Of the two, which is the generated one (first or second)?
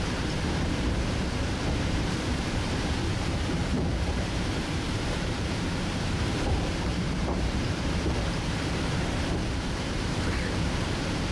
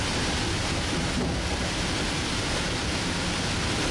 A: first